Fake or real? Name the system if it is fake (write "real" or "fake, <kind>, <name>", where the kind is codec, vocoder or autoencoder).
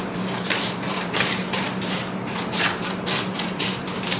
fake, vocoder, BigVGAN v2